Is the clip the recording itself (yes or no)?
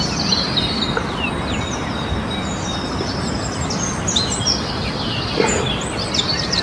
yes